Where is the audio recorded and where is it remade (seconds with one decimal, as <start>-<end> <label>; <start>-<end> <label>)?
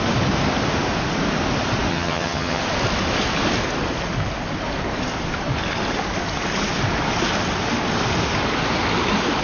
0.0-1.9 recorded; 1.9-2.6 remade; 2.6-9.4 recorded